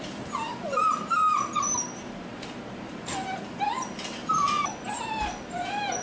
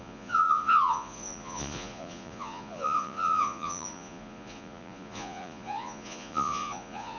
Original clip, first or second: first